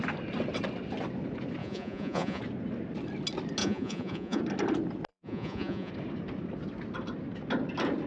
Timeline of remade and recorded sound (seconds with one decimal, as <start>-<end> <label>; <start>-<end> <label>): 0.0-1.6 recorded; 1.6-2.4 remade; 2.4-3.6 recorded; 3.6-4.4 remade; 4.4-5.1 recorded; 5.1-5.9 remade; 5.9-8.1 recorded